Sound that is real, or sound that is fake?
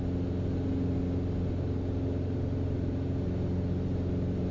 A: real